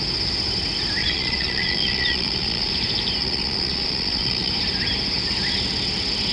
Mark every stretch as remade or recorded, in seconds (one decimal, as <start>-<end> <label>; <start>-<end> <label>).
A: 0.0-1.0 recorded; 1.0-2.7 remade; 2.7-3.2 recorded; 3.2-4.5 remade; 4.5-6.3 recorded